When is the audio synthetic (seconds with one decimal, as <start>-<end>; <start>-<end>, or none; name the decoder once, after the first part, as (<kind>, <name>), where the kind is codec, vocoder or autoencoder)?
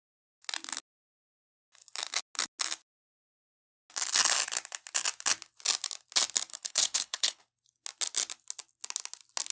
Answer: 6.5-7.4 (codec, HILCodec)